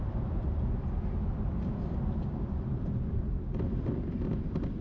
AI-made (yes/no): yes